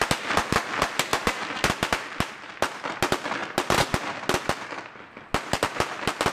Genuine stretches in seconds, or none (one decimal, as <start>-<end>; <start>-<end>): 0.0-6.3